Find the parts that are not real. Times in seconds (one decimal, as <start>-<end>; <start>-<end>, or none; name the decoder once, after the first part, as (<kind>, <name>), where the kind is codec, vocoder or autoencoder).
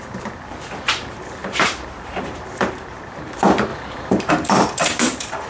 0.0-5.5 (vocoder, BigVGAN v2)